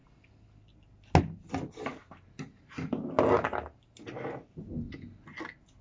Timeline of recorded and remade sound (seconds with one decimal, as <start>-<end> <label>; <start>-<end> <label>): 0.0-5.8 recorded